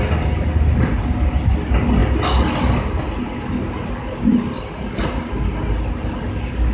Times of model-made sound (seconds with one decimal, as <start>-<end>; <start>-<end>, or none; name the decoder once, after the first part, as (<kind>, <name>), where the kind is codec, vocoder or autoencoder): none